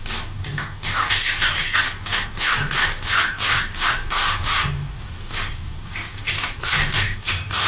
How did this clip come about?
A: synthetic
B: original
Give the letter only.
A